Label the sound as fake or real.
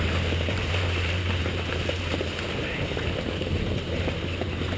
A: fake